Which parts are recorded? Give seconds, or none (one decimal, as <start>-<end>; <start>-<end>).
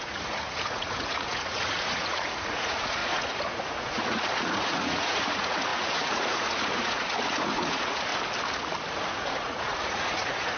8.1-9.1